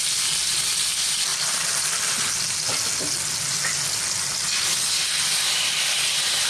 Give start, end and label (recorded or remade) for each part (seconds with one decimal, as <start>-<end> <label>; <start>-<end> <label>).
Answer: 0.0-6.5 recorded